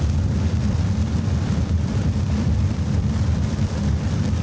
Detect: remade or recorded remade